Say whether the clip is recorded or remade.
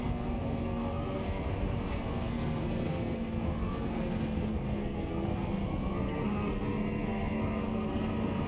remade